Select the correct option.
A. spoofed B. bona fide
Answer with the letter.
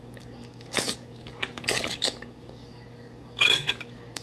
A